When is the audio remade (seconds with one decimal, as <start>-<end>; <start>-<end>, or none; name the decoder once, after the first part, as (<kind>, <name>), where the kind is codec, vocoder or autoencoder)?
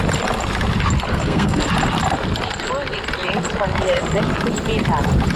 1.1-1.6 (codec, SNAC)